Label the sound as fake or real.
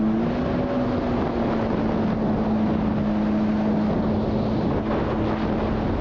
real